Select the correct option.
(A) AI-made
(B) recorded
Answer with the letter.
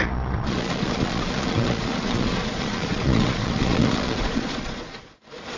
A